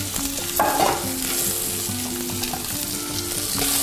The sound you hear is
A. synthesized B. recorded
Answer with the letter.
B